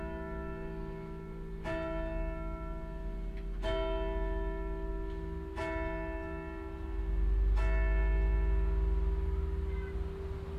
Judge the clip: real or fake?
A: real